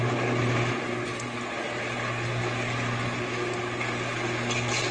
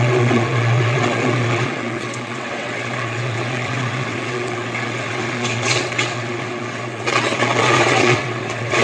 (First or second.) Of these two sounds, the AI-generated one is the second